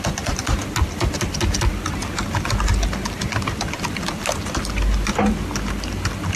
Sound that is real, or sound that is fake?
real